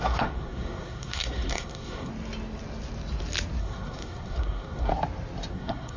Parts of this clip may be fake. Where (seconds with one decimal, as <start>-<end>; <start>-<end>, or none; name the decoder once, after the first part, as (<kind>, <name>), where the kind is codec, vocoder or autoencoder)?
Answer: 0.0-2.1 (codec, SNAC); 3.6-4.9; 5.5-6.0